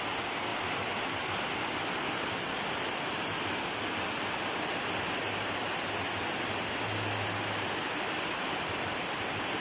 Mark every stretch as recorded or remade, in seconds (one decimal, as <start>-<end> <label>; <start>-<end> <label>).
0.0-9.6 recorded